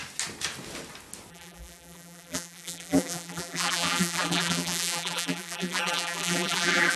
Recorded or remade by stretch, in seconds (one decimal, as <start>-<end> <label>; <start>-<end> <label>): 0.0-1.3 recorded; 1.3-7.0 remade